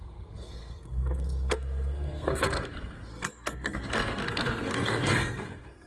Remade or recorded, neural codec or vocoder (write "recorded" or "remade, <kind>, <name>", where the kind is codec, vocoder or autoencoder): remade, codec, SNAC